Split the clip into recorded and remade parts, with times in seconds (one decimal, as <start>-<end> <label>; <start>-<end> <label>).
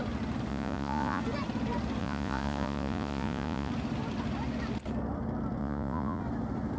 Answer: 0.0-0.5 recorded; 0.5-1.2 remade; 1.2-2.0 recorded; 2.0-3.7 remade; 3.7-5.6 recorded; 5.6-6.2 remade; 6.2-6.8 recorded